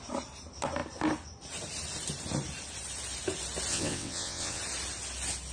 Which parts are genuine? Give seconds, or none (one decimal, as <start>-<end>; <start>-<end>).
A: 0.0-3.7; 4.6-5.5